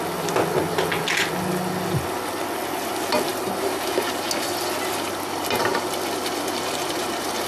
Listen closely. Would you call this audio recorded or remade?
recorded